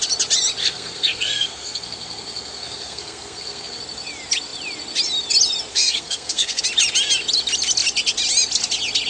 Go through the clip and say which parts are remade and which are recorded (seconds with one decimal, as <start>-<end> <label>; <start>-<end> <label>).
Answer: 0.0-0.6 recorded; 0.6-3.8 remade; 3.8-5.7 recorded; 5.7-6.6 remade; 6.6-9.1 recorded